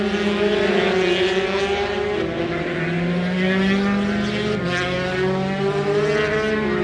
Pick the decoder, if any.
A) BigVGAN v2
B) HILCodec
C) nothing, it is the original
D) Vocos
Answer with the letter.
C